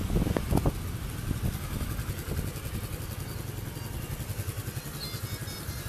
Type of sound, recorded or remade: recorded